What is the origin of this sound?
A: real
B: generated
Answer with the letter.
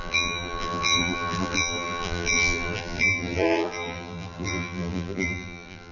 B